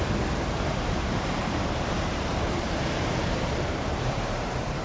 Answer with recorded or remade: remade